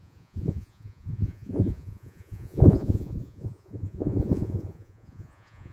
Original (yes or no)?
no